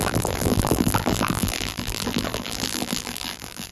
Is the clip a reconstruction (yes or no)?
yes